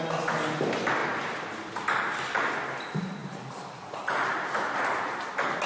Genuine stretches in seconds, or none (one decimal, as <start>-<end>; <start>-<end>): 0.0-5.7